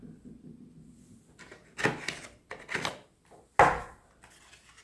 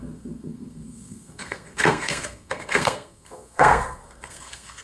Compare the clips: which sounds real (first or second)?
first